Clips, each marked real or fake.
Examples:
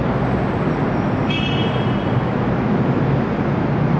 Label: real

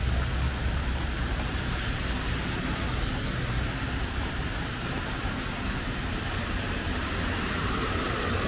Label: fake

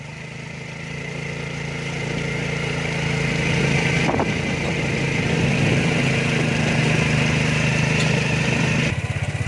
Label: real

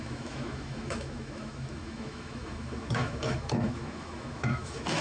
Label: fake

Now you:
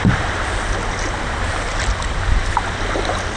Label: real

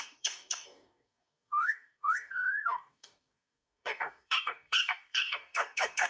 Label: fake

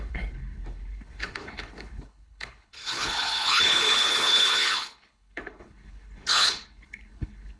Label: fake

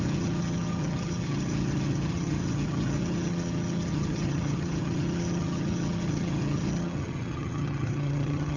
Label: fake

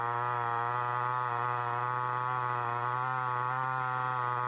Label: real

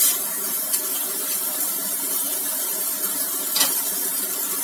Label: fake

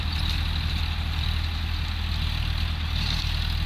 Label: real